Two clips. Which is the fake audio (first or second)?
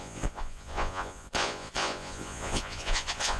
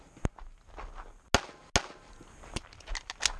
first